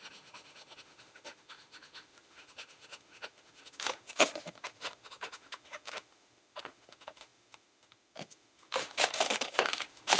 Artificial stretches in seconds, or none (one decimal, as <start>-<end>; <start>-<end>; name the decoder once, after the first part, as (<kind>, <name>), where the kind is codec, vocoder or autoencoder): 0.0-10.2 (autoencoder, DAC-VAE)

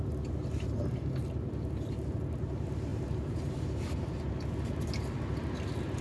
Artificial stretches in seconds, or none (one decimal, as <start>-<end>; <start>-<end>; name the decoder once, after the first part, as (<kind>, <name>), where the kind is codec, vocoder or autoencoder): 2.9-3.6 (vocoder, BigVGAN v2)

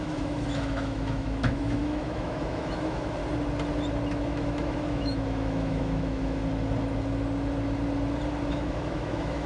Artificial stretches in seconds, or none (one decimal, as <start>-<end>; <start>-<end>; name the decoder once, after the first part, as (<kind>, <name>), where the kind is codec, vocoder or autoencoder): 0.0-3.2 (autoencoder, DAC-VAE); 4.1-6.4; 8.5-9.5

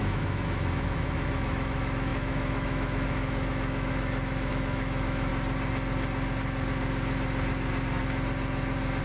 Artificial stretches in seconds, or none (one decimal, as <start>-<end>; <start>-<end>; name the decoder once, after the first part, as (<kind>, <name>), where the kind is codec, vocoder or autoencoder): 0.0-5.3 (autoencoder, DAC-VAE)

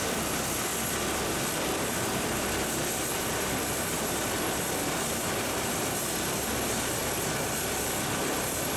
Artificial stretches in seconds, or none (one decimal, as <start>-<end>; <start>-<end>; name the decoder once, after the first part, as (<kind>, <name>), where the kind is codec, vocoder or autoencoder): 0.0-0.7 (vocoder, BigVGAN v2); 1.8-7.0; 8.2-8.8

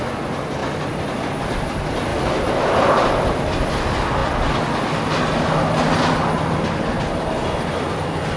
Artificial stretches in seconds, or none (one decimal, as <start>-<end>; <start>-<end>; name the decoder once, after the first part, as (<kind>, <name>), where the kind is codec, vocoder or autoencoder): 2.1-2.9 (vocoder, BigVGAN v2)